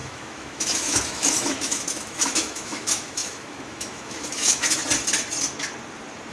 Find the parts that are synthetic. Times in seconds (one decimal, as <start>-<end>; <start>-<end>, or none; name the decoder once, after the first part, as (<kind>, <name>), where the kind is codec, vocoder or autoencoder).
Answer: 0.0-4.8 (autoencoder, DAC-VAE)